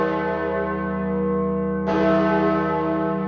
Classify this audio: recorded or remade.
recorded